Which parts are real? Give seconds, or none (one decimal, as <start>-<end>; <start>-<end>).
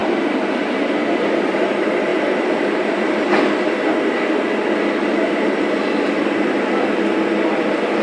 0.6-2.1; 3.6-8.0